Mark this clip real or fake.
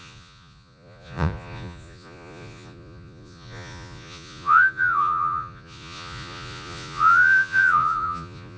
fake